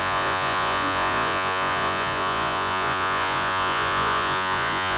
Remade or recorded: remade